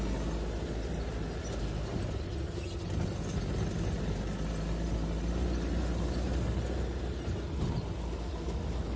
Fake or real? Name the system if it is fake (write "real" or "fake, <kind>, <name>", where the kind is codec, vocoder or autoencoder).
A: real